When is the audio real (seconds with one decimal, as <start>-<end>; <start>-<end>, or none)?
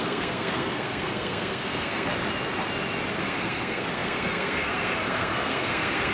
2.1-3.2